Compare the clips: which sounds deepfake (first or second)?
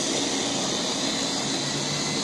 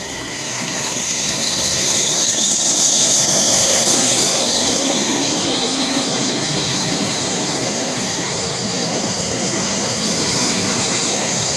second